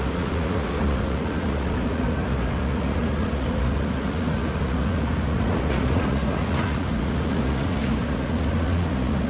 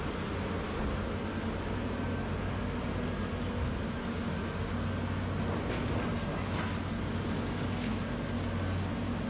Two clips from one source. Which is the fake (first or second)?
first